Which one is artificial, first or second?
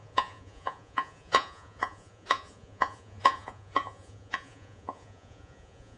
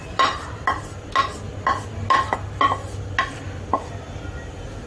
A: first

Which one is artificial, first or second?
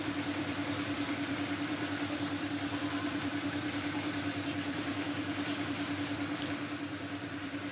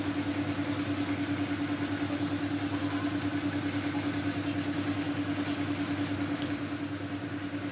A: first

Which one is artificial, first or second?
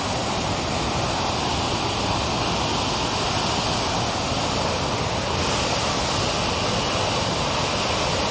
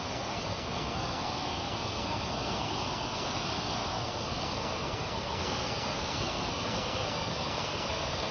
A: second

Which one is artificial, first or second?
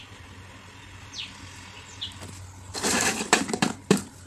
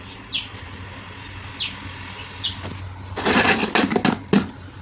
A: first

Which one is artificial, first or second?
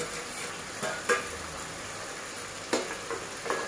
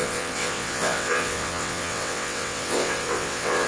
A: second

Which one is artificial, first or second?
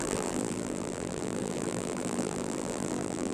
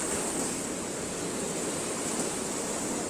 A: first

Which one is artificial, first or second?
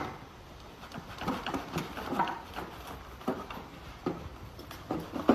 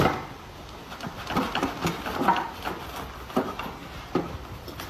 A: first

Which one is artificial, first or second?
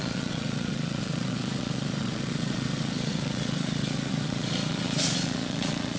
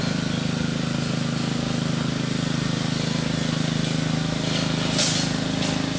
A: first